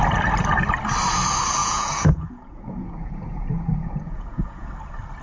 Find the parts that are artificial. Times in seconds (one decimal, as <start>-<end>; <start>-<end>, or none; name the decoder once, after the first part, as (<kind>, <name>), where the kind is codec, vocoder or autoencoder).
1.6-4.7 (vocoder, Vocos)